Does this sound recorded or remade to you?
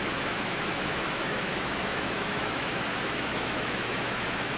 remade